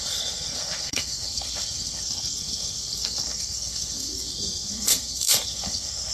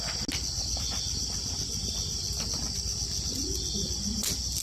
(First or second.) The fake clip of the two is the first